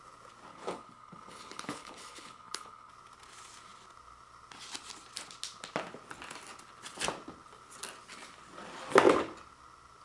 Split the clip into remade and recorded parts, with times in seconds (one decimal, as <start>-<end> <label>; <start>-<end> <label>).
0.0-0.5 recorded; 0.5-2.9 remade; 2.9-10.0 recorded